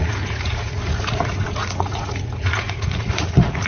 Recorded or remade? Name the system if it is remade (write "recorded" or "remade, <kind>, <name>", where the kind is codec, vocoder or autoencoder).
remade, vocoder, Vocos